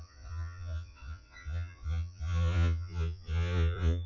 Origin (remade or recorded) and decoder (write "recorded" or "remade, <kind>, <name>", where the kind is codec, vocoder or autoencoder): remade, vocoder, Vocos